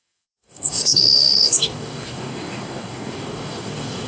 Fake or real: fake